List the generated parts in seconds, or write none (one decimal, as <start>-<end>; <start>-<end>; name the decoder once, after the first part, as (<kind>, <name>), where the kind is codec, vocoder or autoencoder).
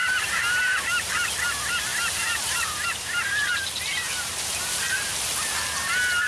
0.0-0.8 (vocoder, BigVGAN v2); 1.9-4.7